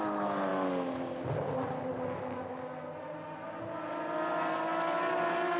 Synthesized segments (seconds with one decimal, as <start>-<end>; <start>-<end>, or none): none